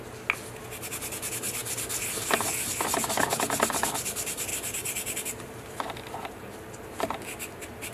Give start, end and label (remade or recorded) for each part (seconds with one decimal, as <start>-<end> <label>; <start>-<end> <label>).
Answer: 0.0-4.5 recorded; 4.5-5.7 remade; 5.7-7.9 recorded